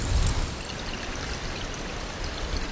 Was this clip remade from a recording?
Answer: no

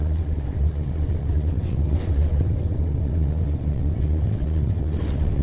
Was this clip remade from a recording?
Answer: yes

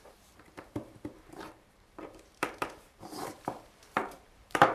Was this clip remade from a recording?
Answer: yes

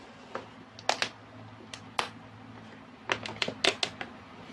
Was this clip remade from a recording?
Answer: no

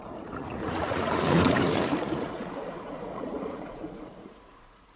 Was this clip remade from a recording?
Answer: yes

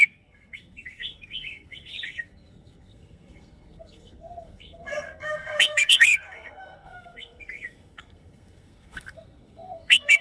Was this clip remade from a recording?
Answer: yes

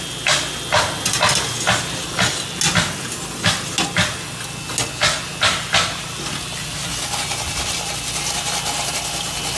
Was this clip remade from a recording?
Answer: no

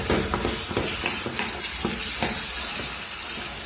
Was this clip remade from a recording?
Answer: no